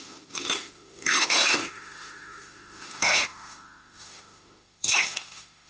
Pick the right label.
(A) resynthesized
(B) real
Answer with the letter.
A